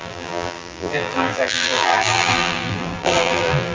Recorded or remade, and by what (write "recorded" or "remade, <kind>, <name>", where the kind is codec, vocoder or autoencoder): remade, vocoder, BigVGAN v2